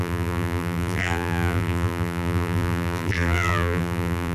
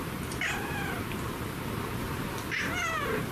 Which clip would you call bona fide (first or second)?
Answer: second